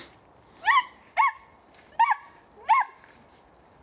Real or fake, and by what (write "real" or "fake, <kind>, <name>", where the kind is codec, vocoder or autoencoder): fake, vocoder, BigVGAN v2